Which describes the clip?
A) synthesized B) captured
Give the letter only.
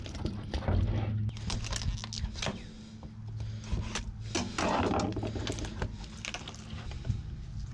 B